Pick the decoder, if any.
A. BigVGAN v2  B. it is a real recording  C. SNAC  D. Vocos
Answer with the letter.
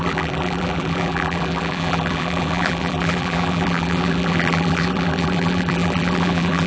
A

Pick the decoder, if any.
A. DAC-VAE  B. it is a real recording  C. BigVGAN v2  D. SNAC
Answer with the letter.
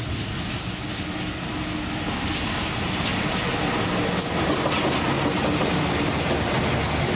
B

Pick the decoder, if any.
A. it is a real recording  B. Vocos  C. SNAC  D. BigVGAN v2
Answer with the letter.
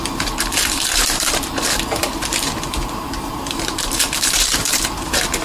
D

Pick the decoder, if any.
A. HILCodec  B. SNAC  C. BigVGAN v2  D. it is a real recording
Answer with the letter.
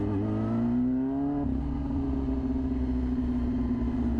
D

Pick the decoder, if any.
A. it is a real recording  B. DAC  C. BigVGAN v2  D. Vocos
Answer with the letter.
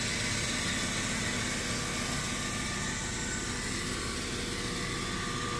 A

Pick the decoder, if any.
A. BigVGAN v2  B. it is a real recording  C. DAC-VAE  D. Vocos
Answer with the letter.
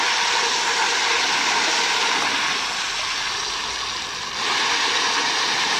B